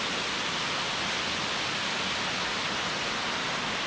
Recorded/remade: recorded